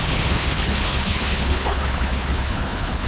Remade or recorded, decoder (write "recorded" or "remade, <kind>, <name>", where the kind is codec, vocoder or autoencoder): remade, codec, HILCodec